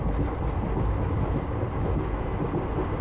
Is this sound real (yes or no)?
yes